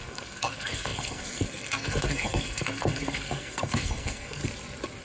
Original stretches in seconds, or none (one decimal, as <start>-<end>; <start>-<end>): 4.4-5.0